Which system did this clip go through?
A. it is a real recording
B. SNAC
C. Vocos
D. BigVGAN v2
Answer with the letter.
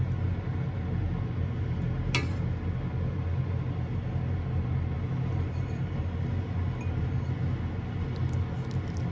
A